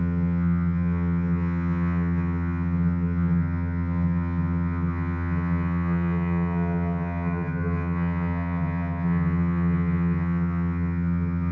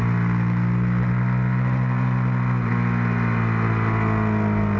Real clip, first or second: second